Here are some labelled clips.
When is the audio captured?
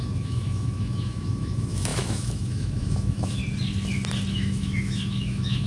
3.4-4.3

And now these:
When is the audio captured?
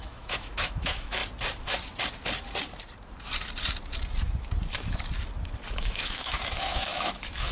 1.2-5.7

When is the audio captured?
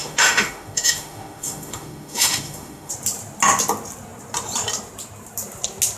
2.9-6.0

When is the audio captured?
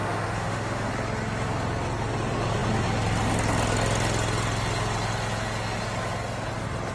0.9-6.9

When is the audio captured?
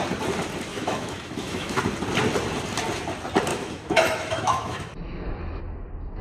0.0-0.7; 1.8-3.5; 5.6-6.2